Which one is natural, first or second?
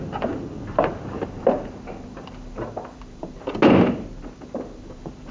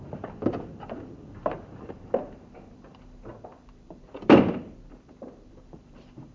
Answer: first